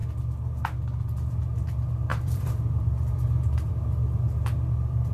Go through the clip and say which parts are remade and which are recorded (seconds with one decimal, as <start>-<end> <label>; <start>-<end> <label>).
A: 0.0-2.1 recorded; 2.1-3.7 remade; 3.7-5.1 recorded